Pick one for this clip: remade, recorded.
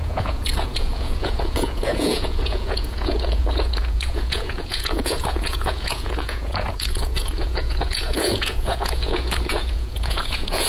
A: remade